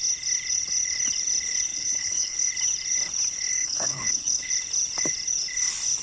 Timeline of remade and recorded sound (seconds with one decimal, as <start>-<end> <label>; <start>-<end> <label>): 0.0-1.7 recorded; 1.7-2.5 remade; 2.5-3.6 recorded; 3.6-4.5 remade; 4.5-6.0 recorded